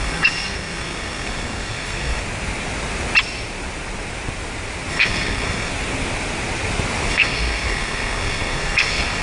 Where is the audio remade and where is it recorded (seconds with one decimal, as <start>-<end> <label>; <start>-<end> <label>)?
0.0-2.2 remade; 2.2-4.9 recorded; 4.9-5.7 remade; 5.7-7.1 recorded; 7.1-9.2 remade

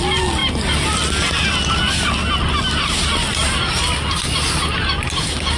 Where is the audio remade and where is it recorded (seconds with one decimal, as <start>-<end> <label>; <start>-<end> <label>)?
0.0-5.6 recorded

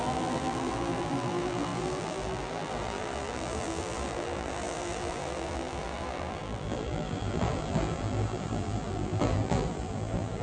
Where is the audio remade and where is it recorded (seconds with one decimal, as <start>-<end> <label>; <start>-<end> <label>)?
0.0-10.4 remade

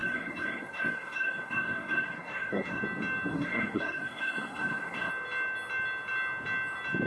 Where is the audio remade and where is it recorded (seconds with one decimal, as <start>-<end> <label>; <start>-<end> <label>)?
0.0-2.8 remade; 2.8-3.3 recorded; 3.3-5.1 remade; 5.1-7.1 recorded

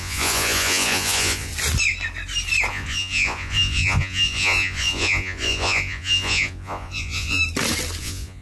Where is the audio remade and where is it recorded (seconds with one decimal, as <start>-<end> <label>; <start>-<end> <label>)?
0.0-1.5 remade; 1.5-2.7 recorded; 2.7-7.4 remade; 7.4-8.0 recorded; 8.0-8.4 remade